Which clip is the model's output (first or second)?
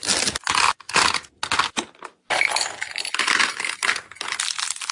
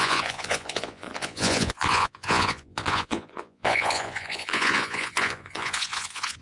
second